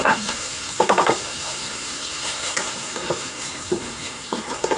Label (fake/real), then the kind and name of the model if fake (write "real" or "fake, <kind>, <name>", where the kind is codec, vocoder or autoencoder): fake, codec, SNAC